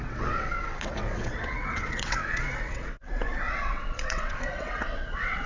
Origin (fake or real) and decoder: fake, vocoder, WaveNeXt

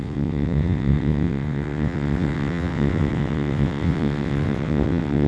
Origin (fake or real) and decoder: fake, vocoder, WaveNeXt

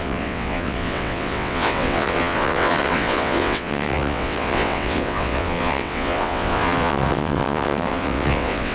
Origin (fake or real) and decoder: fake, vocoder, WaveNeXt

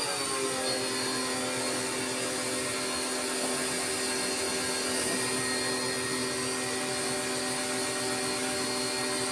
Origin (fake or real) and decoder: real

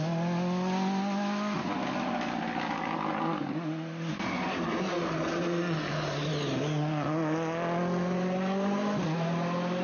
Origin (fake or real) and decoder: real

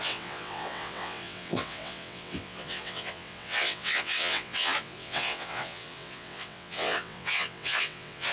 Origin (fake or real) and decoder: fake, vocoder, WaveNeXt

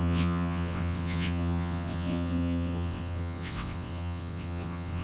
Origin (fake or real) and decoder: fake, vocoder, WaveNeXt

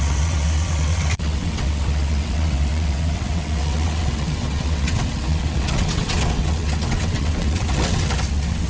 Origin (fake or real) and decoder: fake, vocoder, WaveNeXt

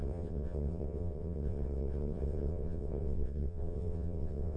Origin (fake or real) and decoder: fake, vocoder, WaveNeXt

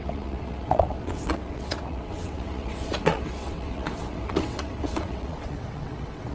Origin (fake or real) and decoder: fake, vocoder, WaveNeXt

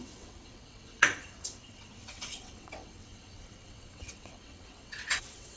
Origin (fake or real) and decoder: fake, vocoder, WaveNeXt